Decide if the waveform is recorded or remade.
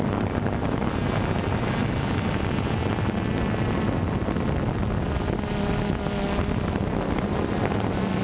recorded